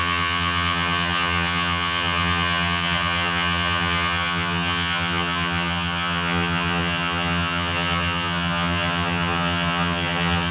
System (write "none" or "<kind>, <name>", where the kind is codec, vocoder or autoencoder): vocoder, HiFi-GAN